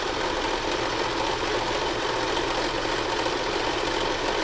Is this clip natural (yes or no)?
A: yes